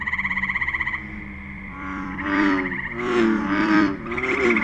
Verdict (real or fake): fake